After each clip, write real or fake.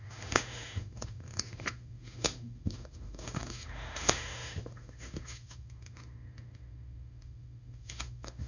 fake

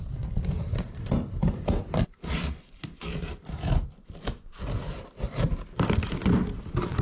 real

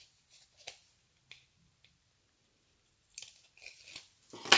real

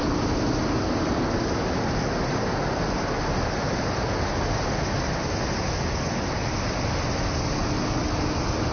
real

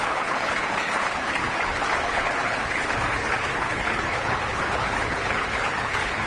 fake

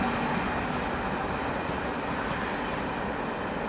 real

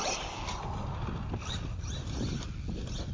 real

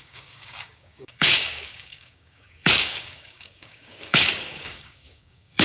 fake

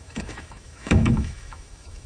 fake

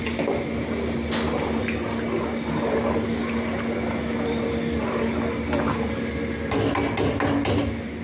real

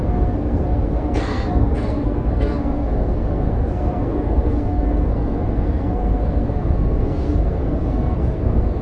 fake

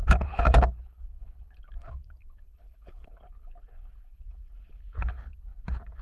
fake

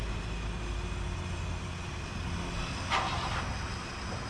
real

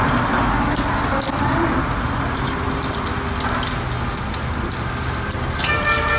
real